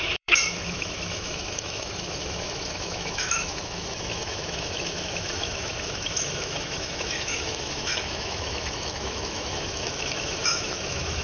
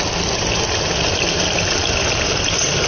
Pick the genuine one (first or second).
second